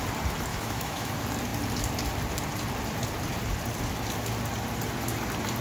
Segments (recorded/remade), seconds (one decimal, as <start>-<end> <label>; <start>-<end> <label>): 0.0-0.5 recorded; 0.5-1.1 remade; 1.1-5.6 recorded